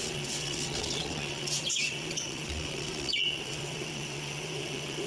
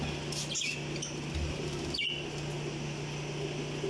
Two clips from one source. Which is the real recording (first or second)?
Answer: second